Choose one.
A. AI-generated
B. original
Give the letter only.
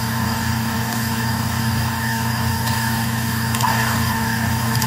A